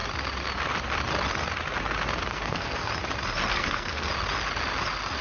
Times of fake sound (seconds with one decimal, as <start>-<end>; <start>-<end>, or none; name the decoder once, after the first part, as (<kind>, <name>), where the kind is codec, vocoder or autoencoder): 2.3-2.9 (codec, SNAC); 3.5-4.1

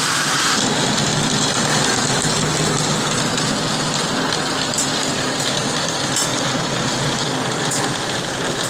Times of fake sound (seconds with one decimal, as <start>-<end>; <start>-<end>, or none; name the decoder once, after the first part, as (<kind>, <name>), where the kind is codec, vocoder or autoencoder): none